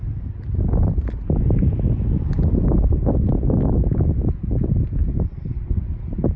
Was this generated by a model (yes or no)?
no